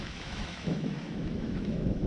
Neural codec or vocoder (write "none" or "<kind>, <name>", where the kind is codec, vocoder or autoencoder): autoencoder, DAC-VAE